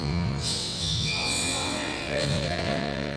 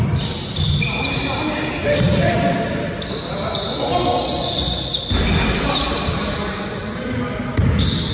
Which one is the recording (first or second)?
second